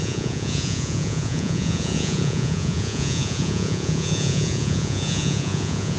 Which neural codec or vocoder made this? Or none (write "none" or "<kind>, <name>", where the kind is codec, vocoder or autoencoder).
vocoder, Vocos